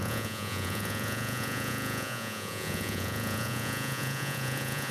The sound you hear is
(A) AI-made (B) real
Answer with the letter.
A